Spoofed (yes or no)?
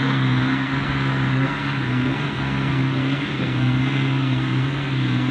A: yes